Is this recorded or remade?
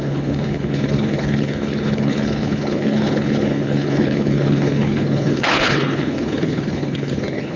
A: remade